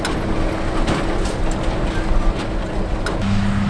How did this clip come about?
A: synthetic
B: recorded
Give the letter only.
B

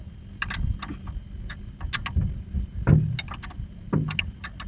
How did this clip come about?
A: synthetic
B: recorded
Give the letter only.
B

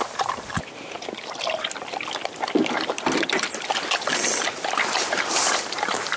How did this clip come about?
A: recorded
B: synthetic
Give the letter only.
A